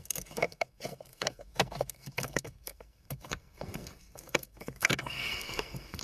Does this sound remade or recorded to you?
remade